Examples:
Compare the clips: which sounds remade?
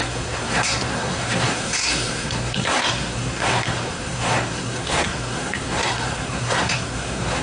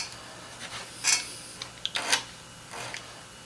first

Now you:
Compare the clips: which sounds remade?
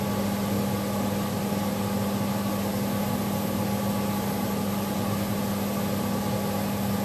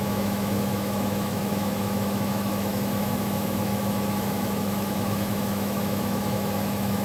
second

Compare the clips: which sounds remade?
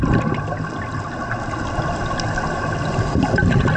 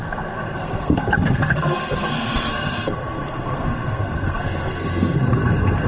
second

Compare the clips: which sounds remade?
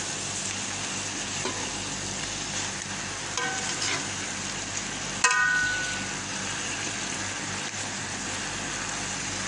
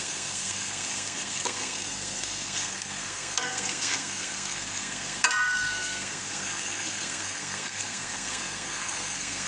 second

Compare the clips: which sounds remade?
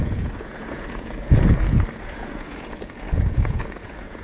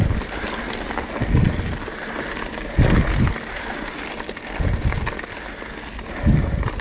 first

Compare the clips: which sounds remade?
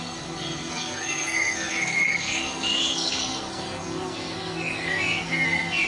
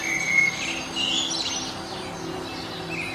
first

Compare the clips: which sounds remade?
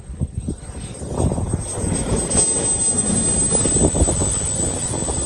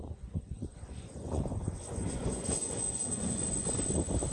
second